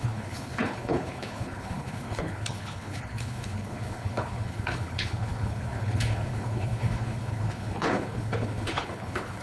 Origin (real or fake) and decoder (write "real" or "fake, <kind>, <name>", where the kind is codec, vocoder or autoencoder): fake, codec, HILCodec